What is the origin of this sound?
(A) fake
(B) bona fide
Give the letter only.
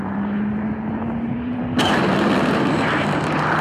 B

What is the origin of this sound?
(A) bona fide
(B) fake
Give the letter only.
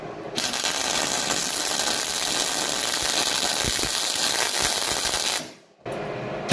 A